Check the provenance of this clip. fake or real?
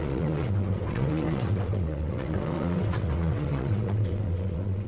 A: fake